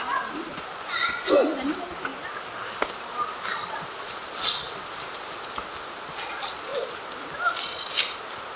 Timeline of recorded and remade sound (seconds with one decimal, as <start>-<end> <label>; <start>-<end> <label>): 0.0-0.5 recorded; 0.5-1.3 remade; 1.3-8.6 recorded